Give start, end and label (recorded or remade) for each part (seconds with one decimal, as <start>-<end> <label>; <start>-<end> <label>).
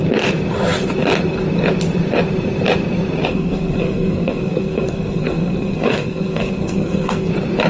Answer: 0.0-3.3 recorded; 3.3-7.3 remade; 7.3-7.7 recorded